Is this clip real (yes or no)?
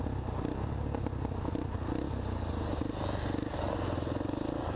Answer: yes